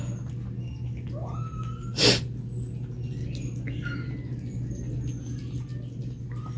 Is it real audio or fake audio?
real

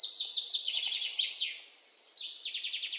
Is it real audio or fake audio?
real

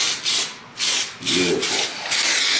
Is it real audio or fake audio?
real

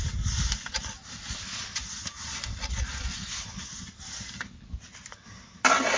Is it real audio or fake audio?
real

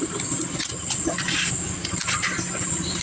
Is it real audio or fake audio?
real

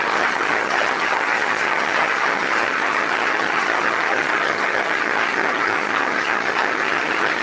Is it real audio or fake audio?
fake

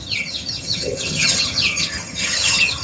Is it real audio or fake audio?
fake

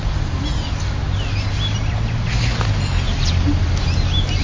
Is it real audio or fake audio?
real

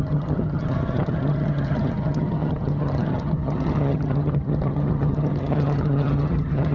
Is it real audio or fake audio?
fake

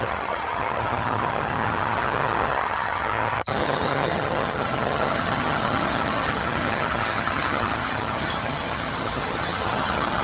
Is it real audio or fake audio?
fake